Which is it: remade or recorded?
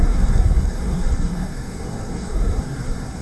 remade